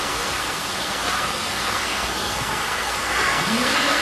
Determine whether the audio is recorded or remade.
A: remade